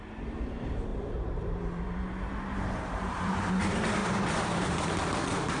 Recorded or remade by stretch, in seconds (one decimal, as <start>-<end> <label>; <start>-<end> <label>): 0.0-0.9 recorded; 0.9-3.5 remade; 3.5-4.0 recorded; 4.0-4.9 remade; 4.9-5.6 recorded